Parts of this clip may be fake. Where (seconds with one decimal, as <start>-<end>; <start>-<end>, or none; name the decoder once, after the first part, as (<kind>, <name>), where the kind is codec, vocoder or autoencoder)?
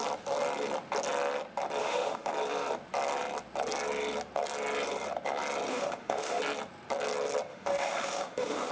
1.8-2.3 (autoencoder, DAC-VAE); 5.7-6.4; 7.5-8.7